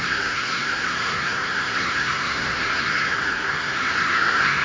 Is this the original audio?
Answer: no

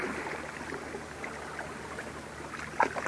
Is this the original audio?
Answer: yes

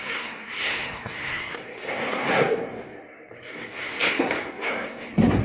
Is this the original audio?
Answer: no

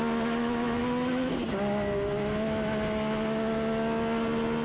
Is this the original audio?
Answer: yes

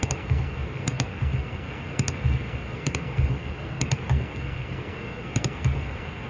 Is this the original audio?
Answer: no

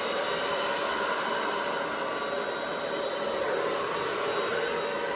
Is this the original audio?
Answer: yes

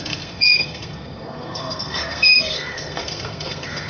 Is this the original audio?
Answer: no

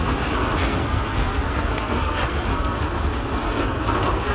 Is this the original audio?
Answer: no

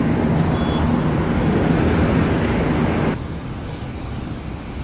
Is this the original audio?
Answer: yes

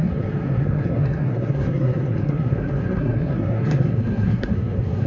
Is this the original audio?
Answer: no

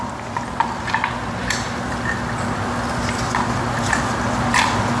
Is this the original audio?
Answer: yes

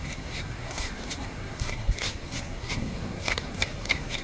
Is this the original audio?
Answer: no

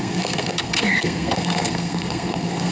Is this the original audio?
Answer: no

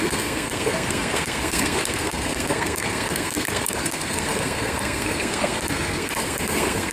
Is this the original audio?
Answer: no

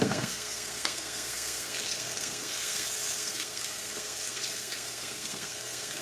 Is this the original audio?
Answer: no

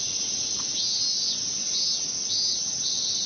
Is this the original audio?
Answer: yes